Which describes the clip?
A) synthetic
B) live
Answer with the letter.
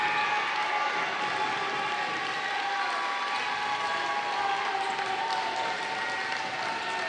B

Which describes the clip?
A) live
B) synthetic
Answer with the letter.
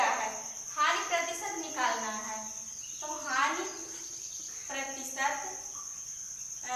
A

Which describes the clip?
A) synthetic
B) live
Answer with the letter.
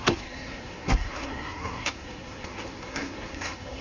A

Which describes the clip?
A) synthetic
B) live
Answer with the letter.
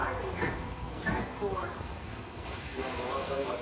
A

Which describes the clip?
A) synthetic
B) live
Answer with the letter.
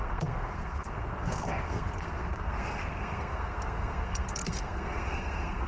A